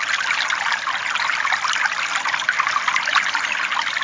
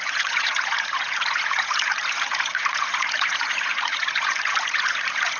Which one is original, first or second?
first